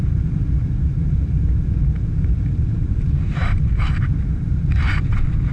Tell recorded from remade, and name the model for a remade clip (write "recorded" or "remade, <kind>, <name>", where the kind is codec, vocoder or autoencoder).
remade, vocoder, BigVGAN v2